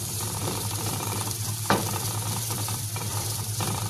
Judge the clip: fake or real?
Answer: fake